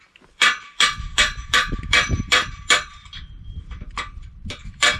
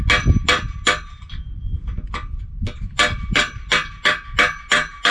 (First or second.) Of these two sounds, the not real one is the first